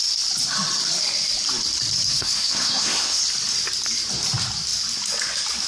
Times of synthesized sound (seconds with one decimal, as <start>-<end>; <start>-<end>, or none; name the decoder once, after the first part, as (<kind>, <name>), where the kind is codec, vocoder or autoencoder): 2.1-3.2 (codec, SNAC)